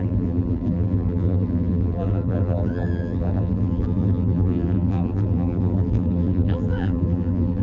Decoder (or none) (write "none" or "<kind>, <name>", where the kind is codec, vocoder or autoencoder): vocoder, BigVGAN v2